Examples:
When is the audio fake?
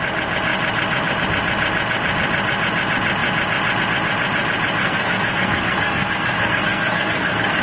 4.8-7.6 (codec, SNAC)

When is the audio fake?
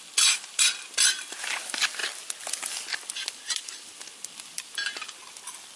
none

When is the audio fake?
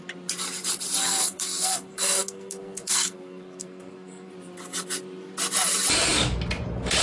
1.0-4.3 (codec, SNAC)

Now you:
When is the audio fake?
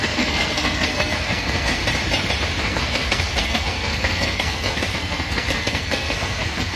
0.0-1.8 (codec, SNAC); 2.6-6.8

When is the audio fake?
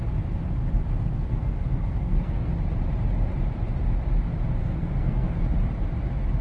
1.1-2.5 (codec, SNAC); 4.6-5.4